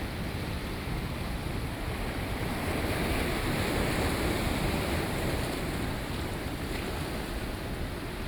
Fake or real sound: fake